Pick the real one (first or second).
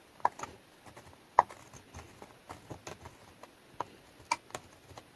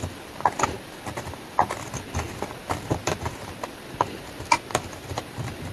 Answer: first